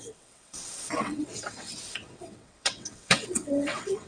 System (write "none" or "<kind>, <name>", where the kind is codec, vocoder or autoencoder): vocoder, WaveNeXt